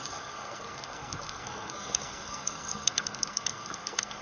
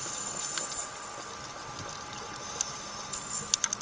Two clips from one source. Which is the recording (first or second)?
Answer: second